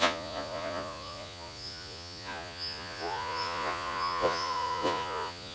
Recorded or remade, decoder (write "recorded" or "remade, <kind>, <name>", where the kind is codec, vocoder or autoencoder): remade, vocoder, Vocos